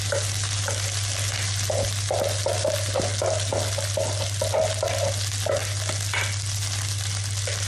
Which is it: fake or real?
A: real